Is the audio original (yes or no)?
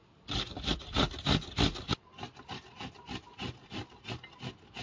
yes